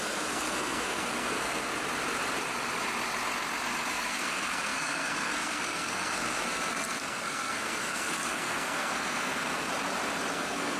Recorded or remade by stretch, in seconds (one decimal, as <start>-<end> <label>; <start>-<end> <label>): 0.0-1.7 remade; 1.7-3.9 recorded; 3.9-9.7 remade; 9.7-10.3 recorded; 10.3-10.8 remade